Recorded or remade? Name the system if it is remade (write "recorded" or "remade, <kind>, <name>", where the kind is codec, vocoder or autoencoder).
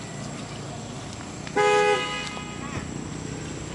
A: recorded